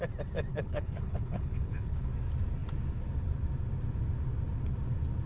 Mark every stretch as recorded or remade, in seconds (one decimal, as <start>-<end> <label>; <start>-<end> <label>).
0.0-0.5 recorded; 0.5-2.1 remade; 2.1-5.3 recorded